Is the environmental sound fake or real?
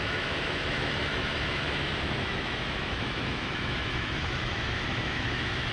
fake